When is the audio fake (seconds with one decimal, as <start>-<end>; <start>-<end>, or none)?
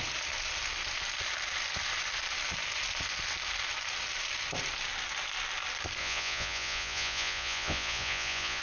6.0-8.6